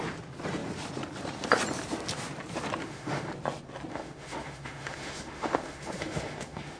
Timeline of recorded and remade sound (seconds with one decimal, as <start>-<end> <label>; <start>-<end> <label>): 0.0-2.8 recorded; 2.8-3.3 remade; 3.3-3.9 recorded; 3.9-6.8 remade